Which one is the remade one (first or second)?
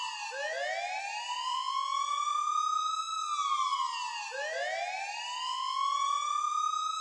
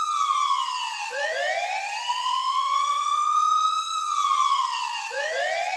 second